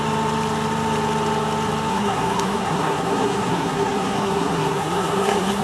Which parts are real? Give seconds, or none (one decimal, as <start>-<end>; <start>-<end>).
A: 0.0-1.9